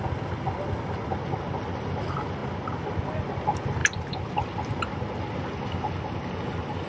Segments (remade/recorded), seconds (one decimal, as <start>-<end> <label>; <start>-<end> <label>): 0.0-6.9 recorded